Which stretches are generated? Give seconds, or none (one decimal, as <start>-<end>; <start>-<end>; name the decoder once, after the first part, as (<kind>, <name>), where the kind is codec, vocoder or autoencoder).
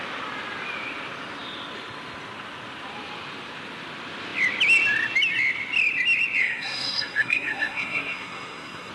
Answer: 6.4-8.9 (codec, SNAC)